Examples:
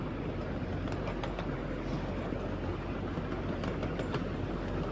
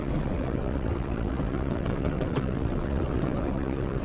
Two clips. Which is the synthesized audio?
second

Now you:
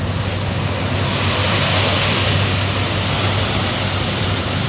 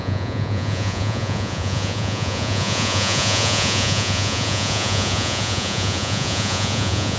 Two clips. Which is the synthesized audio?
second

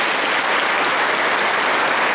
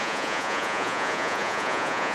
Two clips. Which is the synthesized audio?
second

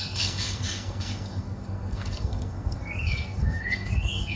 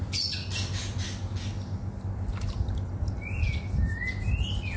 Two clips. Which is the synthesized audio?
first